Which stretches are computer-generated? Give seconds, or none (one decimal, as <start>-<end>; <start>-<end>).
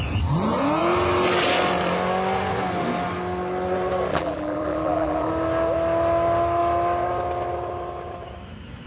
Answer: 4.1-5.3